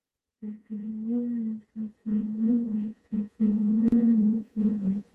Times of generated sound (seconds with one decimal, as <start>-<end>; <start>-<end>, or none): 0.0-0.9; 2.0-5.1